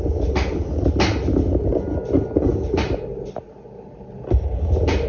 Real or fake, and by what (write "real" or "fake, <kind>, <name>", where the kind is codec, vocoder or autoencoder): real